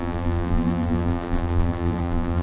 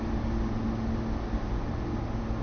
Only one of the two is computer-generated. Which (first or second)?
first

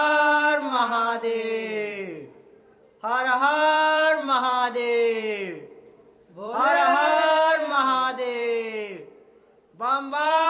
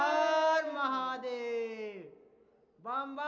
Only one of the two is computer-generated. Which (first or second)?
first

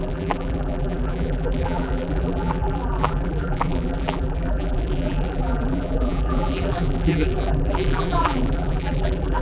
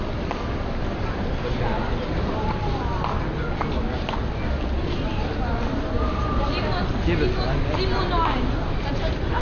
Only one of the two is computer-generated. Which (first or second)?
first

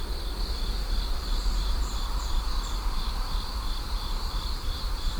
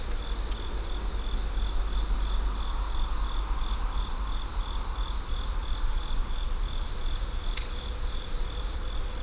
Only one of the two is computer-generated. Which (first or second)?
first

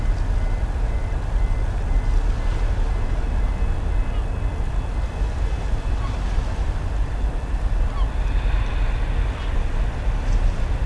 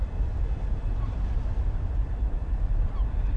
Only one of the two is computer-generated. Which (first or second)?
second